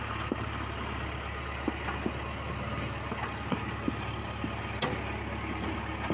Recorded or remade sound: recorded